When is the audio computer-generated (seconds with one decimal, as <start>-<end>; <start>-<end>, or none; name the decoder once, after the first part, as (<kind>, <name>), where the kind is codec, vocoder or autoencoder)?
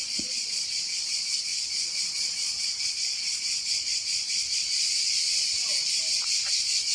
0.0-5.5 (vocoder, Vocos); 6.5-6.9